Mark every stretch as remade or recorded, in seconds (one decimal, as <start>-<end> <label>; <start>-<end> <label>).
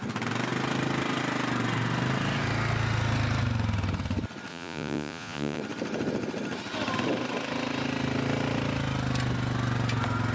0.0-4.5 recorded; 4.5-5.6 remade; 5.6-10.3 recorded